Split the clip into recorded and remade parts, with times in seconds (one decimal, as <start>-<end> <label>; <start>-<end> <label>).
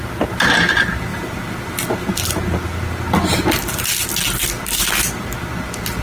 0.0-1.1 recorded; 1.1-1.6 remade; 1.6-6.0 recorded